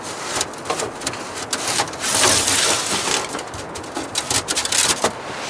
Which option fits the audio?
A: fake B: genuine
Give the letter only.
B